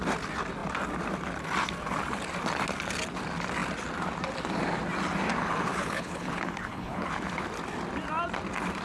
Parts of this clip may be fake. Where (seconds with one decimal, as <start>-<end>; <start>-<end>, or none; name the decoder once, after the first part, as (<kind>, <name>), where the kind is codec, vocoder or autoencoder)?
5.7-7.1 (codec, HILCodec)